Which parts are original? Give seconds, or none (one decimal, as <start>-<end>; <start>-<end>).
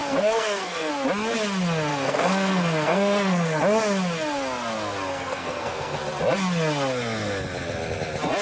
0.9-1.9; 3.6-5.1; 6.0-8.4